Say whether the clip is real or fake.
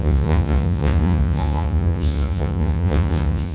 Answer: fake